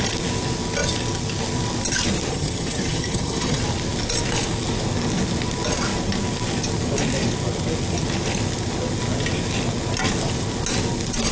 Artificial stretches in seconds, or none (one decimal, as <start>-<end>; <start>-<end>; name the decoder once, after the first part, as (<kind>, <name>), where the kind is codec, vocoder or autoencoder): 2.3-3.6 (vocoder, HiFi-GAN)